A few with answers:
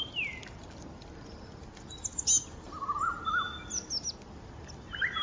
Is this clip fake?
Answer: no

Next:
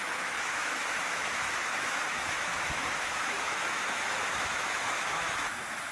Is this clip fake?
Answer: yes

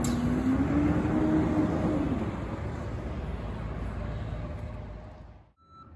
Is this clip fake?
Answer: no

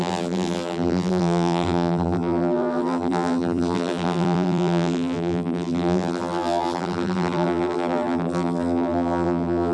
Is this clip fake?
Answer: yes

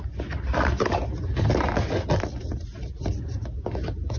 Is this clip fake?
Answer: no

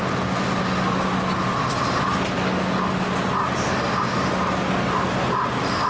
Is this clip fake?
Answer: no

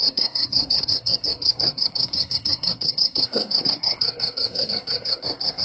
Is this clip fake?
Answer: yes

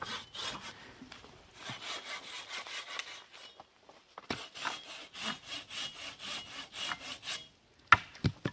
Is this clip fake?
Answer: no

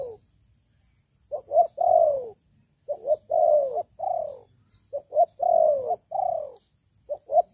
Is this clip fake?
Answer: no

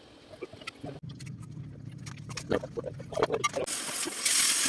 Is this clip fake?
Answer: no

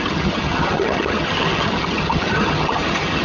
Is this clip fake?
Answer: yes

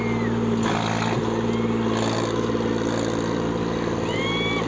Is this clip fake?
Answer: no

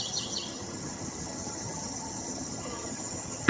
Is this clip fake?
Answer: yes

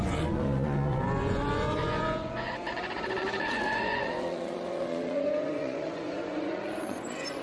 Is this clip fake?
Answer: yes